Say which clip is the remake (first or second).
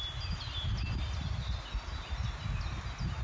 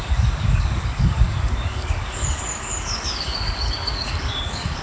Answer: second